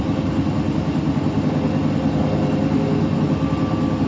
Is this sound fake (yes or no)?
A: no